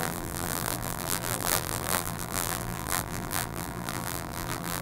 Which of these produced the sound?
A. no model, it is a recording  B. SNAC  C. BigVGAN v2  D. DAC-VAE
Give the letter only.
C